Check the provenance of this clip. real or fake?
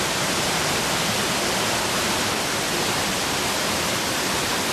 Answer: real